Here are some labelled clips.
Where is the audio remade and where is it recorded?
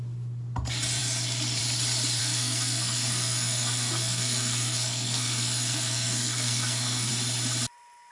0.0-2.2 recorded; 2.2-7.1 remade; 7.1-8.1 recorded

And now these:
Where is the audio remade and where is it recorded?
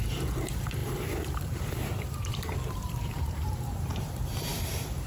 0.0-5.1 remade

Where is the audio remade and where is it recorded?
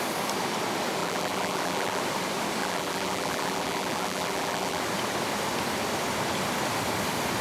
0.0-1.0 recorded; 1.0-2.0 remade; 2.0-2.6 recorded; 2.6-4.8 remade; 4.8-7.4 recorded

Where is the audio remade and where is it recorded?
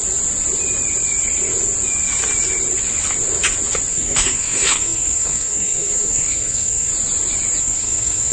0.0-3.9 recorded; 3.9-6.9 remade; 6.9-7.6 recorded; 7.6-8.3 remade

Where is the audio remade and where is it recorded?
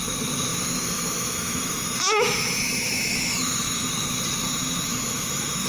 0.0-0.5 recorded; 0.5-3.9 remade; 3.9-4.4 recorded; 4.4-5.7 remade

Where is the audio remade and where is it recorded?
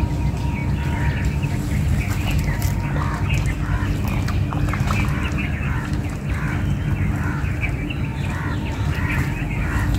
0.0-8.1 recorded; 8.1-9.0 remade; 9.0-10.0 recorded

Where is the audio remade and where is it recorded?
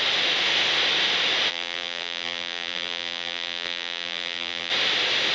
0.0-1.5 recorded; 1.5-4.7 remade; 4.7-5.3 recorded